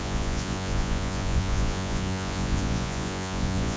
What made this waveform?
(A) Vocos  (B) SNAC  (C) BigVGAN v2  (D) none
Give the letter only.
A